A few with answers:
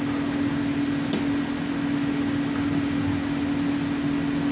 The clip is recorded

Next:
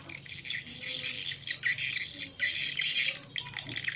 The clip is recorded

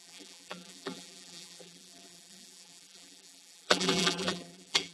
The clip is remade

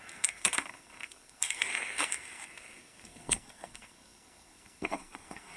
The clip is remade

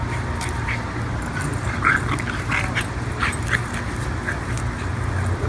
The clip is recorded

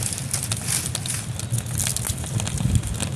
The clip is recorded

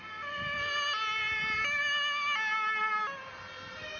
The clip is recorded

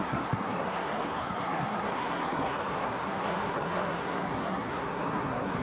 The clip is remade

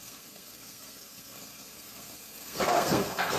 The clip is remade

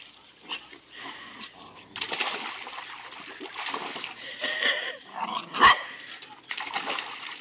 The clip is recorded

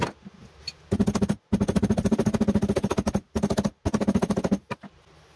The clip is recorded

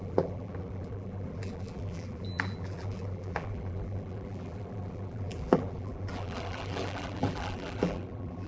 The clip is remade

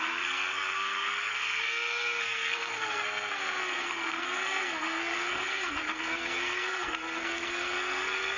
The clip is remade